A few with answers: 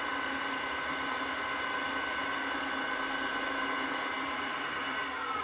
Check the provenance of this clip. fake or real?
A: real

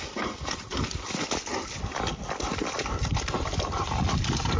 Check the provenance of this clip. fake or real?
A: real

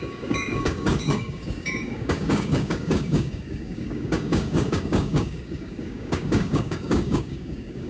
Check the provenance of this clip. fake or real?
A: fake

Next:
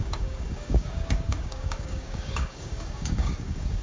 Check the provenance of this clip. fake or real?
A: fake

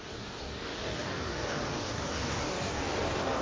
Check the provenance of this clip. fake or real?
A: fake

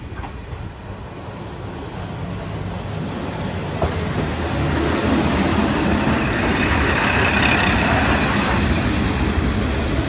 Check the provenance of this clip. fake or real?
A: real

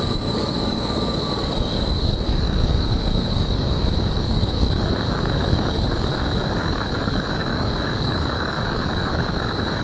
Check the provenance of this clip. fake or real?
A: fake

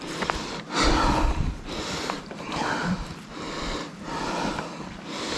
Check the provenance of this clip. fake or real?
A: real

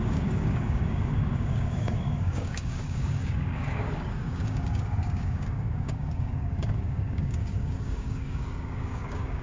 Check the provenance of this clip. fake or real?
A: fake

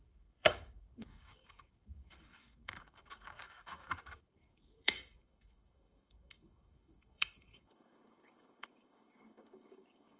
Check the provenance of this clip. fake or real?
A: fake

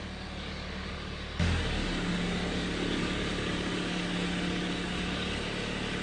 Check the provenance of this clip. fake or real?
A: fake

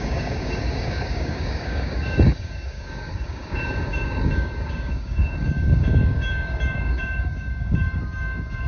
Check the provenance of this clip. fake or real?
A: fake